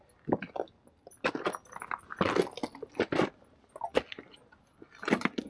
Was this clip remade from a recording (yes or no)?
no